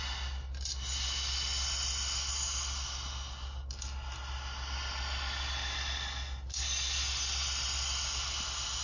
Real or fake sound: real